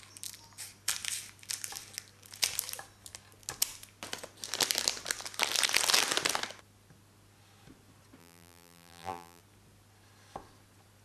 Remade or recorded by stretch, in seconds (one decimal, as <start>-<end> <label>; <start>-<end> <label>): 0.0-8.2 recorded; 8.2-9.4 remade; 9.4-11.0 recorded